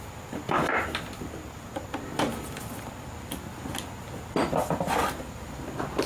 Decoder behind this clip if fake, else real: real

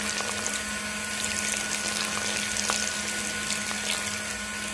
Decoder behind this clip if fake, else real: real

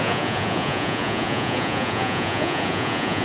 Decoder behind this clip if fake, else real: fake, vocoder, Vocos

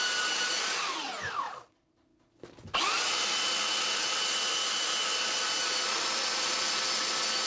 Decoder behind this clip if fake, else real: real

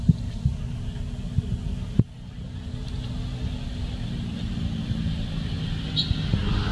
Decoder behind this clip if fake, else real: real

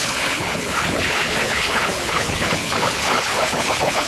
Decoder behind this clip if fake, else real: fake, codec, HILCodec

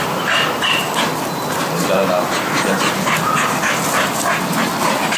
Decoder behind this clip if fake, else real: real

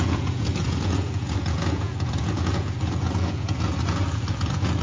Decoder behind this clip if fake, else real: fake, vocoder, Vocos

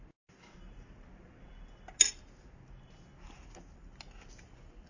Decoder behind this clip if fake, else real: real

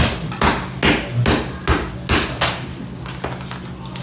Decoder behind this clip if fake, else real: real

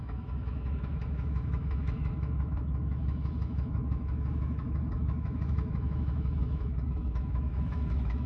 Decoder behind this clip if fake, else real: fake, autoencoder, DAC-VAE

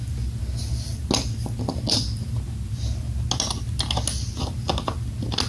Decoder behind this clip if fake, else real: real